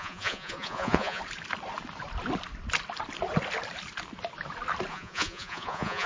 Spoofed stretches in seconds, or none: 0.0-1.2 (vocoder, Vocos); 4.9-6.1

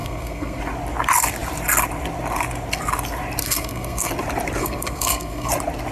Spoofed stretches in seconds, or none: 0.0-0.6 (codec, SNAC); 3.4-4.1; 4.6-5.5

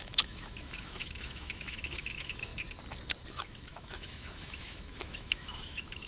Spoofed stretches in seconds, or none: 0.0-2.5 (autoencoder, DAC-VAE); 3.3-6.1

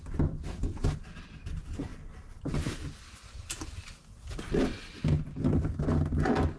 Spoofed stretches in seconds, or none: none